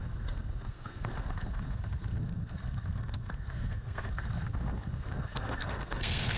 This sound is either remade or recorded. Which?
remade